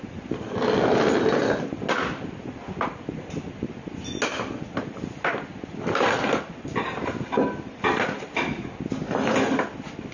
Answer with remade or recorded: recorded